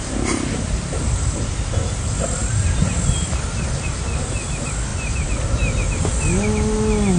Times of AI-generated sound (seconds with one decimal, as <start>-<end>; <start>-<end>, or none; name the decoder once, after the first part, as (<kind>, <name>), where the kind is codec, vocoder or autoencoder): none